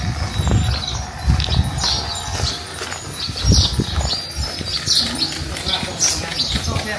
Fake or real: real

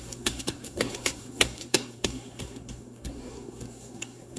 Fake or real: fake